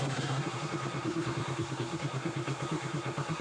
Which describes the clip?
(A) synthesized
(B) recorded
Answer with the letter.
A